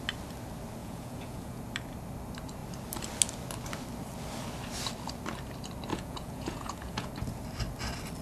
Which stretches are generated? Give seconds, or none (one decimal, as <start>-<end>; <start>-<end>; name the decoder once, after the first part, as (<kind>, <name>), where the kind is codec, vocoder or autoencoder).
0.8-1.6 (vocoder, Vocos); 5.9-7.1